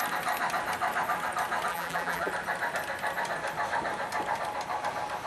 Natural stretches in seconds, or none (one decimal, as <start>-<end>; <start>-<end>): 0.0-1.7; 2.3-5.3